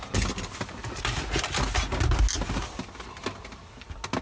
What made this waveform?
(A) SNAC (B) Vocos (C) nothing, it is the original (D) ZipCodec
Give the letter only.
C